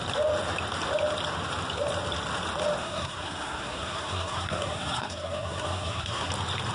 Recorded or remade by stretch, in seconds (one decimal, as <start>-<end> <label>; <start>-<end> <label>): 0.0-2.8 recorded; 2.8-6.3 remade; 6.3-6.7 recorded